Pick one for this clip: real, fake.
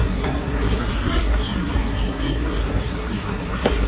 fake